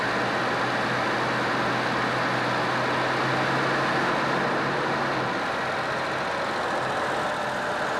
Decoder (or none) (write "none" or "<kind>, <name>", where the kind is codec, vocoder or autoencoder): none